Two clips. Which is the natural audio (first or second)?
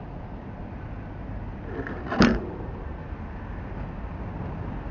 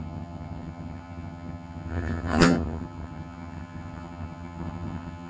first